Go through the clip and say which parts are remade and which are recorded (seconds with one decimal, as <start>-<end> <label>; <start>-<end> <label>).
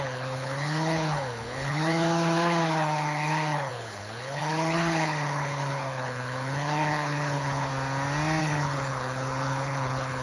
0.0-7.7 remade; 7.7-8.4 recorded; 8.4-10.2 remade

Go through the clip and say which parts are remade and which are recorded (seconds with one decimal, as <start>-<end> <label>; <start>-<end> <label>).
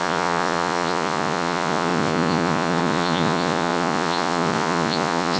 0.0-5.4 remade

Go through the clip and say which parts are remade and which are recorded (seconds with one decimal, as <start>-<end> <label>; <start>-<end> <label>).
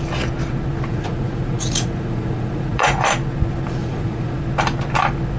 0.0-0.9 recorded; 0.9-3.0 remade; 3.0-3.8 recorded; 3.8-4.4 remade; 4.4-5.4 recorded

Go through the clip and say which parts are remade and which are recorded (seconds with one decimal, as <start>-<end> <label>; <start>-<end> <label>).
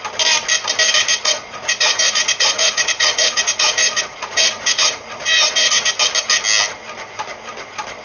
0.0-1.1 recorded; 1.1-5.9 remade; 5.9-8.0 recorded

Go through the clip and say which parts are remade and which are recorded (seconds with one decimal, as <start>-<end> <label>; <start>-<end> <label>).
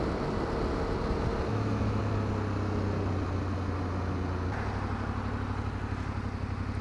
0.0-1.5 recorded; 1.5-2.0 remade; 2.0-6.8 recorded